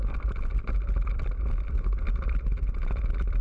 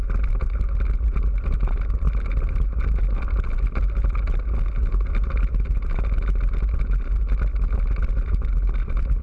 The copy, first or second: first